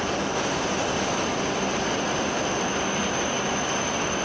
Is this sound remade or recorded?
recorded